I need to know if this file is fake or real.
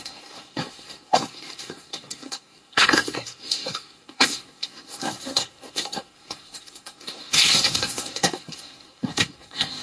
fake